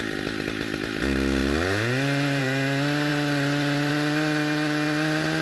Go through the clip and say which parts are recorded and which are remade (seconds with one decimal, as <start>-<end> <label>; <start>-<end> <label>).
0.0-5.4 recorded